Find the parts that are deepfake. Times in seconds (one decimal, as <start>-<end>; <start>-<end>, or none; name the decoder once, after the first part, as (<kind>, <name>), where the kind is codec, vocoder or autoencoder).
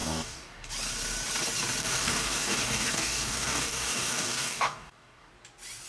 0.0-0.7 (codec, DAC); 1.8-5.3